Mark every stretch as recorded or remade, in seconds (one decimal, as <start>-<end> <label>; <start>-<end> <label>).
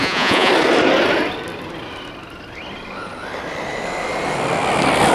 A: 0.0-0.5 remade; 0.5-5.1 recorded